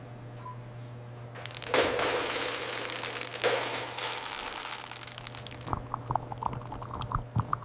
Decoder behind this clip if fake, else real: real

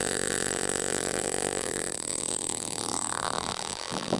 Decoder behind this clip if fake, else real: fake, vocoder, BigVGAN v2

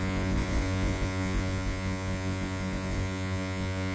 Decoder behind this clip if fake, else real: fake, vocoder, Vocos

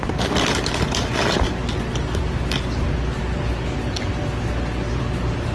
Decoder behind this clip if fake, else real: real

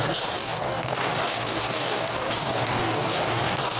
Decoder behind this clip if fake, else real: fake, codec, DAC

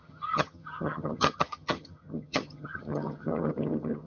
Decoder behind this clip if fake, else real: fake, vocoder, HiFi-GAN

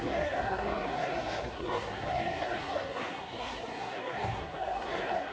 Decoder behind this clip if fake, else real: fake, codec, SNAC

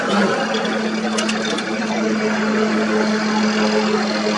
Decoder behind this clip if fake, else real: real